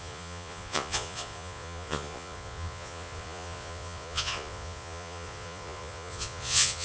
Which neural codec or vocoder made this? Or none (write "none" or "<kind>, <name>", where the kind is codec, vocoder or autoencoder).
vocoder, Vocos